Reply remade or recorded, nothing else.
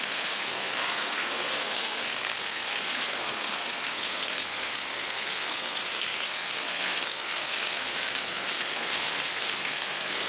remade